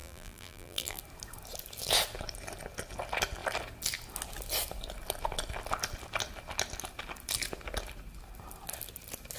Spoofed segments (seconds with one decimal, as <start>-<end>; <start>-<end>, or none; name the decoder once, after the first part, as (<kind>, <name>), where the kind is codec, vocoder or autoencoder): 0.0-1.0 (vocoder, BigVGAN v2)